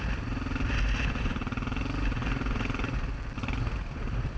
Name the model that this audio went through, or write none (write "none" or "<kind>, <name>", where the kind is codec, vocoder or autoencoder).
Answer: none